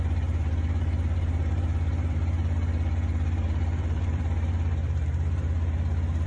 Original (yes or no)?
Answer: no